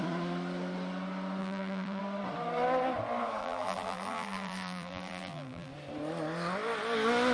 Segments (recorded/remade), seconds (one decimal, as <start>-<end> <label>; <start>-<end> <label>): 0.0-1.4 recorded; 1.4-2.0 remade; 2.0-3.4 recorded; 3.4-5.7 remade; 5.7-7.3 recorded